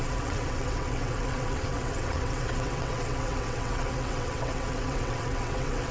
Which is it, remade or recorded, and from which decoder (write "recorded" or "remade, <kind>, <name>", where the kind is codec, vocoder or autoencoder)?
remade, vocoder, WaveNeXt